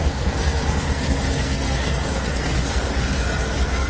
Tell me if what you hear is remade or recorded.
remade